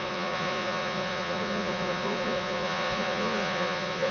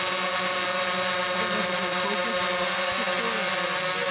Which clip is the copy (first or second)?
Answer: first